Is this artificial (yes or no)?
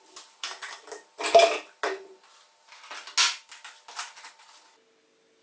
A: no